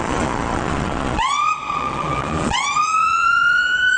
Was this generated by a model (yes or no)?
yes